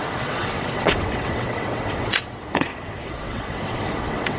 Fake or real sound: fake